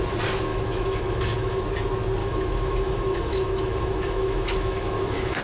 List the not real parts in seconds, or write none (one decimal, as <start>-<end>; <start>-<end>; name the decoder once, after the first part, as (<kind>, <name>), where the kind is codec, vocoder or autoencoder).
0.5-1.6 (autoencoder, DAC-VAE); 2.2-5.4